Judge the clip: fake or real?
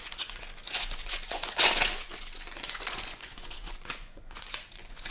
fake